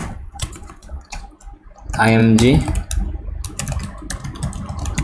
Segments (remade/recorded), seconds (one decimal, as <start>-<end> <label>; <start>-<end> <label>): 0.0-1.2 remade; 1.2-5.0 recorded